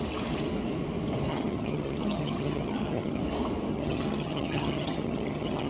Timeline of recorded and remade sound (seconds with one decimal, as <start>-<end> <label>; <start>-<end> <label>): 0.0-1.3 recorded; 1.3-3.2 remade; 3.2-3.7 recorded; 3.7-5.7 remade